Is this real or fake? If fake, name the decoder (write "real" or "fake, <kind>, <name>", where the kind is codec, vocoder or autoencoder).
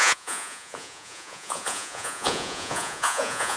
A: fake, vocoder, Vocos